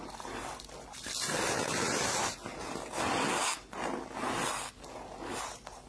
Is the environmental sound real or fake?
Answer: real